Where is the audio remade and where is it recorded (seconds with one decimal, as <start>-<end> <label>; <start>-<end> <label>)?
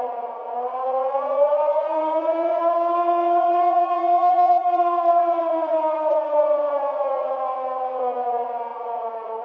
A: 0.0-9.4 remade